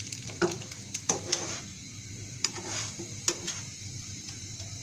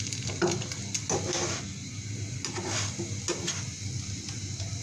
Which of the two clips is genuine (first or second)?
second